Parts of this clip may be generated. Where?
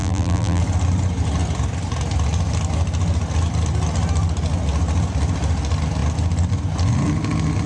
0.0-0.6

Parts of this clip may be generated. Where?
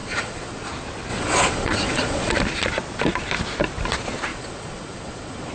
0.0-0.7; 1.1-2.3; 4.3-5.5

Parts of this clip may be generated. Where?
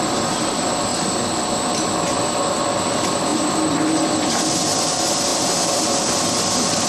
none